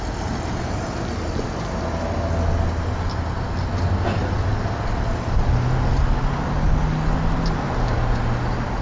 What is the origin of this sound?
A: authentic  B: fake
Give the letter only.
A